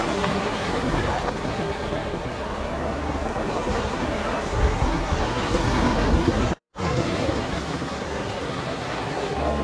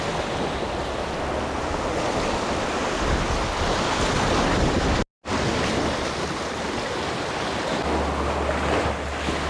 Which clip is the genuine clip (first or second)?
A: second